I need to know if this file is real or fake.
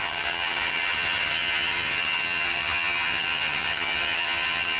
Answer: fake